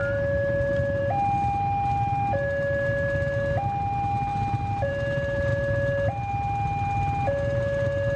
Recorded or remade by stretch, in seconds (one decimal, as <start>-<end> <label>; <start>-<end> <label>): 0.0-8.2 recorded